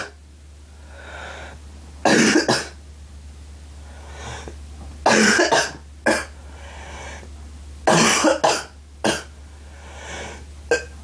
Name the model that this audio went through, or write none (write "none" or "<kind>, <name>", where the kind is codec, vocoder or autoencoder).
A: none